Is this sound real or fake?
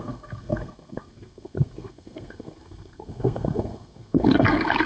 fake